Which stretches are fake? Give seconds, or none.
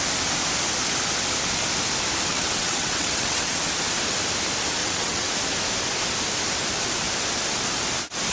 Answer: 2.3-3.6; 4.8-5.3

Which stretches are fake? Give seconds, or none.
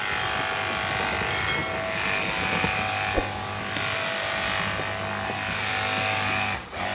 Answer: none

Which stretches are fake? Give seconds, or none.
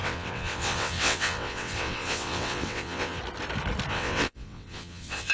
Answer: 0.0-3.2; 3.9-5.3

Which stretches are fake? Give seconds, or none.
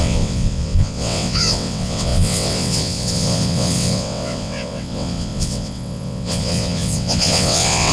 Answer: 0.0-7.9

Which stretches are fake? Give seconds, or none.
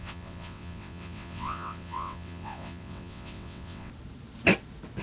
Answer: 0.0-3.9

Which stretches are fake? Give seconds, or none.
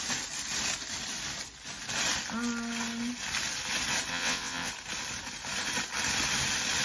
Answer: 4.1-4.7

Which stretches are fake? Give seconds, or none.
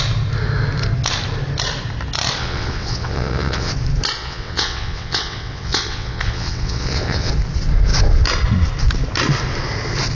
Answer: 2.4-3.7; 4.2-7.3